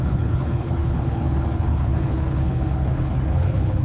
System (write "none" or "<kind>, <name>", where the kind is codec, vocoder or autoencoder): codec, HILCodec